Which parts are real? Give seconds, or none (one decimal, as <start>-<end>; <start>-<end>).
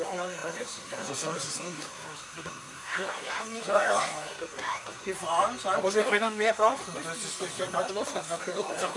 5.2-5.8; 6.8-7.9